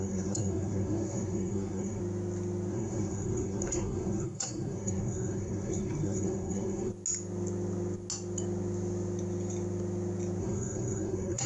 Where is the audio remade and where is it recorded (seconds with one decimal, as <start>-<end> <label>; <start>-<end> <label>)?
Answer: 0.0-2.0 remade; 2.0-2.7 recorded; 2.7-6.9 remade; 6.9-10.4 recorded; 10.4-11.5 remade